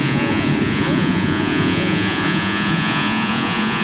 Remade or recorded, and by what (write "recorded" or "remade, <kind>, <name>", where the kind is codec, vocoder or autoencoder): remade, vocoder, Vocos